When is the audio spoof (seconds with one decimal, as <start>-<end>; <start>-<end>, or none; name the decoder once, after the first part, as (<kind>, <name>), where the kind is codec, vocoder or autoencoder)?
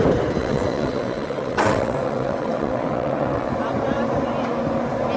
0.4-3.5 (vocoder, WaveNeXt)